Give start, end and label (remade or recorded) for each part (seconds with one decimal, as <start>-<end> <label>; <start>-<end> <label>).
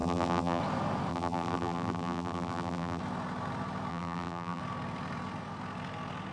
0.0-0.6 remade; 0.6-1.1 recorded; 1.1-3.0 remade; 3.0-3.9 recorded; 3.9-4.6 remade; 4.6-6.3 recorded